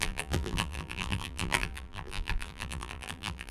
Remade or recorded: remade